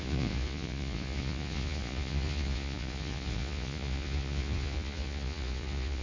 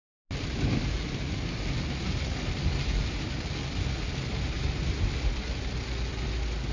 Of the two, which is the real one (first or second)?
second